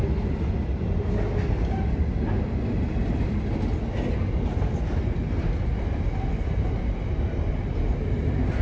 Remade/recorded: recorded